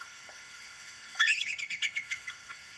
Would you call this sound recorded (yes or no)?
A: no